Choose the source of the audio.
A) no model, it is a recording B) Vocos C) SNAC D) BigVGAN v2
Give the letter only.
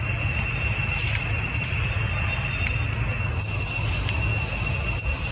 A